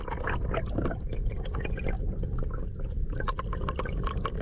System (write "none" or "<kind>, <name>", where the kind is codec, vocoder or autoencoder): none